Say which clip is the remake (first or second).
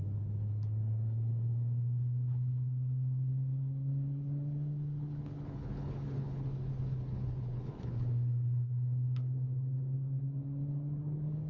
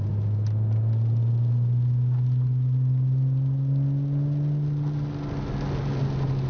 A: first